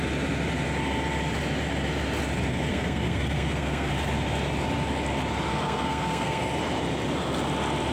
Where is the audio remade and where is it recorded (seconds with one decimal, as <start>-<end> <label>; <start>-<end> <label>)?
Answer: 0.0-2.7 recorded; 2.7-3.9 remade; 3.9-5.5 recorded; 5.5-6.4 remade; 6.4-7.9 recorded